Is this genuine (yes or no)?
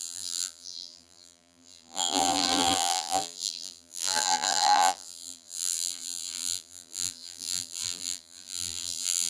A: no